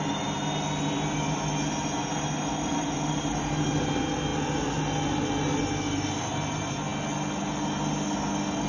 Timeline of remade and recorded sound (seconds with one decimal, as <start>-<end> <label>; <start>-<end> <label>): 0.0-8.7 recorded